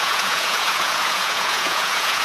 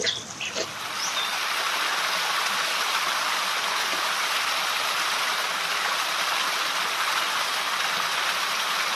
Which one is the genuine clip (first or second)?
second